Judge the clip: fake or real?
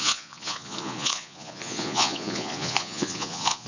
fake